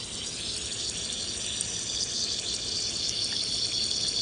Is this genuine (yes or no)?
yes